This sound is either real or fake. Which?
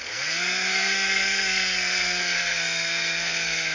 fake